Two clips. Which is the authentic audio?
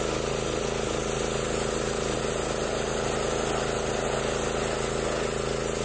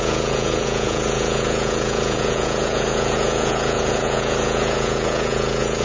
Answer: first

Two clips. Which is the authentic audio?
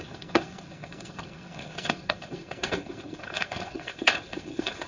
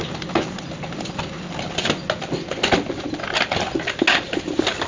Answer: second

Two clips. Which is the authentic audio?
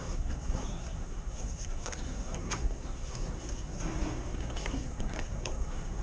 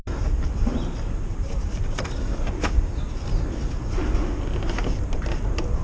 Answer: second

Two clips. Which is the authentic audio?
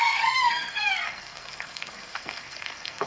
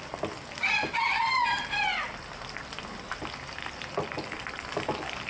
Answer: second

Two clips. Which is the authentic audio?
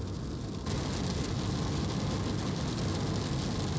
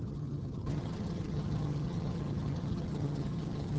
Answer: first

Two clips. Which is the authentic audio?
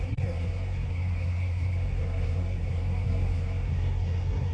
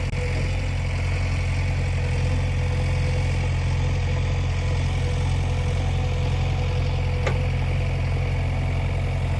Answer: second